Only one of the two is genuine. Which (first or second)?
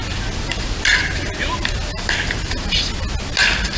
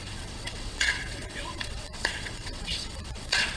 first